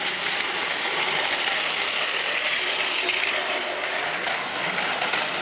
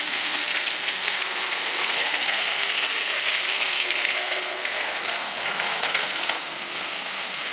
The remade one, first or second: second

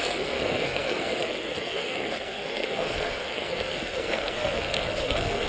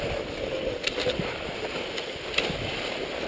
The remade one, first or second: first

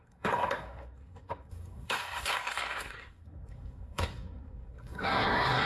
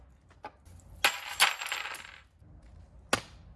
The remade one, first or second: first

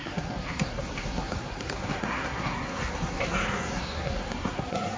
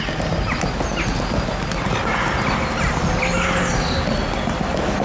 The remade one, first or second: first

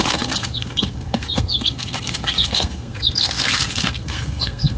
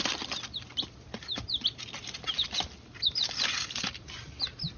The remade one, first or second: first